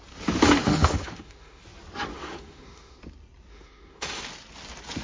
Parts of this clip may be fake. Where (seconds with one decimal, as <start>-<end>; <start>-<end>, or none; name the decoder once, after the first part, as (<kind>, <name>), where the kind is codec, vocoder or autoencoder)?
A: 0.6-1.6 (autoencoder, DAC-VAE); 2.1-3.0; 3.5-4.2